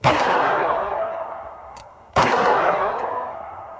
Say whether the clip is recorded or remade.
remade